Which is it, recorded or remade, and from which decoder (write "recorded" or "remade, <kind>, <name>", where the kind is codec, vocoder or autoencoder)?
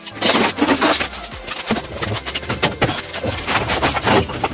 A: recorded